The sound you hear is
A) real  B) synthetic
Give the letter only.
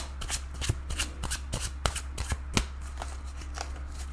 A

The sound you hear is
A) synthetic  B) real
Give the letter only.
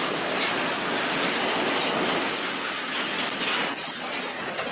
B